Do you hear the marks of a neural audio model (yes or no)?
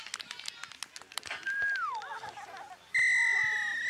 no